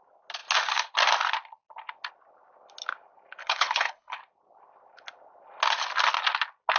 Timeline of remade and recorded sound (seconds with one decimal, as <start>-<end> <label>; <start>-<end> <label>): 0.0-3.4 recorded; 3.4-4.2 remade; 4.2-6.8 recorded